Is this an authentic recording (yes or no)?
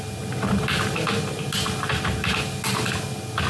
yes